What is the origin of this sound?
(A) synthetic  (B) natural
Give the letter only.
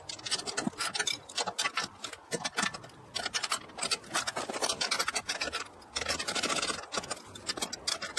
B